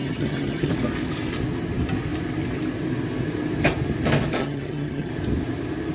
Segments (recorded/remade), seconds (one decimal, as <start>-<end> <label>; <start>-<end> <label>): 0.0-0.7 remade; 0.7-4.4 recorded; 4.4-5.1 remade; 5.1-5.9 recorded